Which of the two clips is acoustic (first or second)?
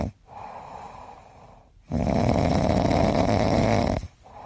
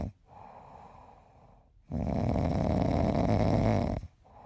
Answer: second